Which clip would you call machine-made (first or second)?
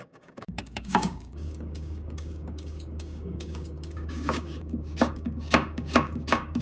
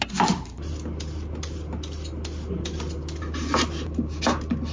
first